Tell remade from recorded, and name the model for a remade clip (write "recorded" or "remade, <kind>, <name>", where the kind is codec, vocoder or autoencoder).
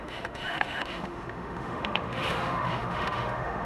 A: remade, autoencoder, DAC-VAE